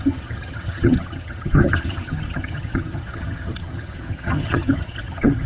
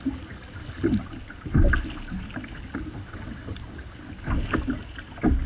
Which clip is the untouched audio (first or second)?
second